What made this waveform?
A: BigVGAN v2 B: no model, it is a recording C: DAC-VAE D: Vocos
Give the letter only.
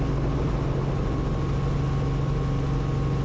B